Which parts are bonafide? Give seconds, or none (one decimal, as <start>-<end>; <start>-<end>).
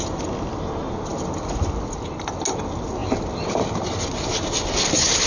0.0-5.3